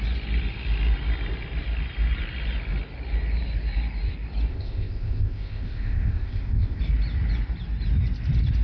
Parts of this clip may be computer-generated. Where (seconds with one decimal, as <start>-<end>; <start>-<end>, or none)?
4.5-6.8